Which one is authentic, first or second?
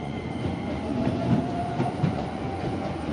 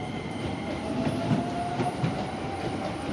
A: second